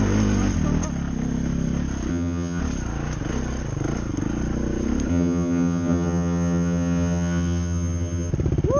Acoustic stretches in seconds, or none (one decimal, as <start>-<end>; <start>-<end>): 0.0-2.1; 2.6-5.1; 8.3-8.8